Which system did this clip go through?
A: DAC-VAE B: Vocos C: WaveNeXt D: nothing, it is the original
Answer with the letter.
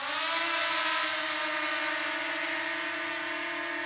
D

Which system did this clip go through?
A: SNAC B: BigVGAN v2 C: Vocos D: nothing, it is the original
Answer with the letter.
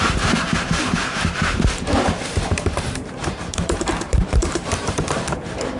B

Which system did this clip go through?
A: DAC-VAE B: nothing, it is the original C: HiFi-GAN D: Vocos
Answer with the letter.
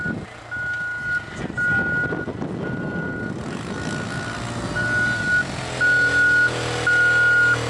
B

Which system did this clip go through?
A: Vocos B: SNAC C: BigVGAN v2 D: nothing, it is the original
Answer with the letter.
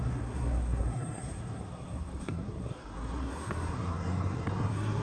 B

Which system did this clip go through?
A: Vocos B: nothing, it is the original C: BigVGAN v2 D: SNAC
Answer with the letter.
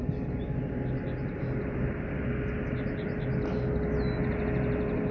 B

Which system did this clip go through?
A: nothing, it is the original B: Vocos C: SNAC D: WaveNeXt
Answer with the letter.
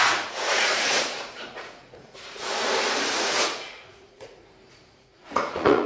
B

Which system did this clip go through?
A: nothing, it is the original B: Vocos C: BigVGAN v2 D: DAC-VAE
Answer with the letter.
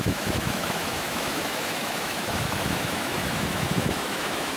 D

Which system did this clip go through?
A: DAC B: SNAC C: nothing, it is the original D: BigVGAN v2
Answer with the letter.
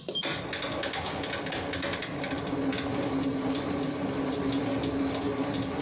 C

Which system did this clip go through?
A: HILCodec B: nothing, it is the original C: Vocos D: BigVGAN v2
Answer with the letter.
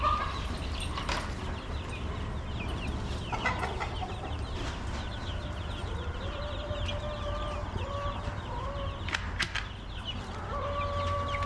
B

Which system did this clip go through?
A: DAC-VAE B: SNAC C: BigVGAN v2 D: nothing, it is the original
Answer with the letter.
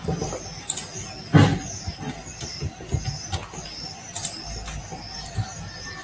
D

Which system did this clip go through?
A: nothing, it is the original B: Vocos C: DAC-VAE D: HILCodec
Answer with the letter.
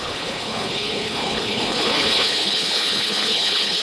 D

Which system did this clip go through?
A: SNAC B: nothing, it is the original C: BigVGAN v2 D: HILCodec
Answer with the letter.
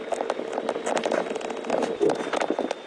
B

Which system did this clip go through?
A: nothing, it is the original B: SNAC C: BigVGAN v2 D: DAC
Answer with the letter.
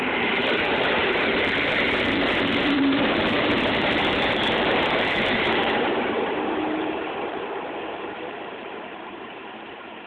C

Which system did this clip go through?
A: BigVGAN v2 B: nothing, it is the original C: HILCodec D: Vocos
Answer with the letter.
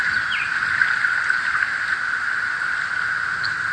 B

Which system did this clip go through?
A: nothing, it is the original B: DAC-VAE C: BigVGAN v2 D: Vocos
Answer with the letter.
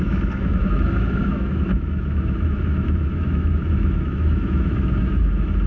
B